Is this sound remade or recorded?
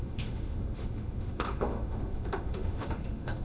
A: remade